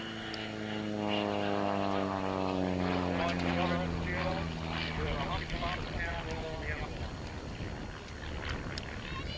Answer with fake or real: real